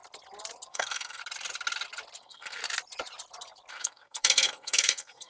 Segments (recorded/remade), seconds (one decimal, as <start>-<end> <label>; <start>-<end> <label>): 0.0-0.7 recorded; 0.7-1.2 remade; 1.2-2.2 recorded; 2.2-2.6 remade; 2.6-3.7 recorded; 3.7-5.3 remade